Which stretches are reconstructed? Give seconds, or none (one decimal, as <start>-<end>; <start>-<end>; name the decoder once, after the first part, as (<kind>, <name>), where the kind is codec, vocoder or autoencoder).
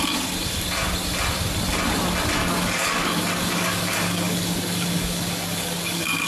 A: 2.4-6.3 (codec, DAC)